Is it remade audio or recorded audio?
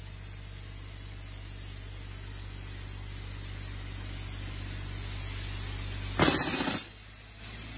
recorded